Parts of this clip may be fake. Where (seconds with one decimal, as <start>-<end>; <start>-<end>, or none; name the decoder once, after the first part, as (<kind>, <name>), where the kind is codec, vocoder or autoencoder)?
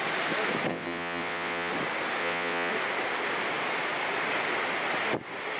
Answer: 0.7-1.7 (vocoder, WaveNeXt); 2.2-2.7